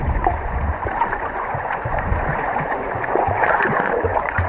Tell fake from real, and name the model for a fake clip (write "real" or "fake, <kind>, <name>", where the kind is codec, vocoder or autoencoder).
fake, vocoder, Vocos